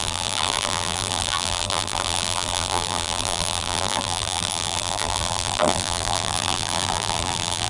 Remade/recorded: remade